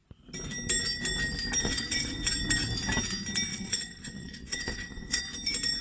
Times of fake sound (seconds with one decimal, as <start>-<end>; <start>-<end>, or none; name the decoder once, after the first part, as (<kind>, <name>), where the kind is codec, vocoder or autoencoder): 1.6-2.3 (vocoder, WaveNeXt); 3.5-5.2